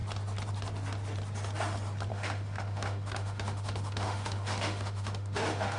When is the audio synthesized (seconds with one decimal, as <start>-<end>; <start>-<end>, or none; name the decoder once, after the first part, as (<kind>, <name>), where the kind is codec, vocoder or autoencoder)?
2.1-5.8 (autoencoder, DAC-VAE)